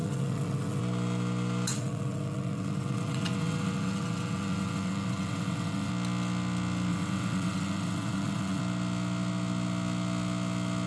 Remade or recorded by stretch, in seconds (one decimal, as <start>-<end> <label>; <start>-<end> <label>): 0.0-0.8 remade; 0.8-1.7 recorded; 1.7-5.9 remade; 5.9-6.9 recorded; 6.9-8.6 remade; 8.6-10.9 recorded